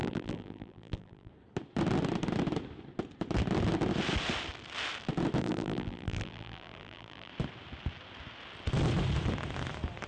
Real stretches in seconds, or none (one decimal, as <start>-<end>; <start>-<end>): 1.3-5.4; 7.3-10.1